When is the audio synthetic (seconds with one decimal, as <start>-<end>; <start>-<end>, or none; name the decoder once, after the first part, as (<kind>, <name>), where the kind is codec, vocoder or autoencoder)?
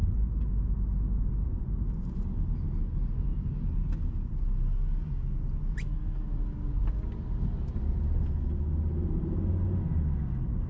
none